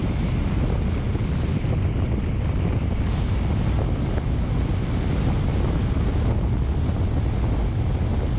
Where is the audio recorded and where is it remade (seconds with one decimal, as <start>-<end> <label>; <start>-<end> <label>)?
0.0-8.4 recorded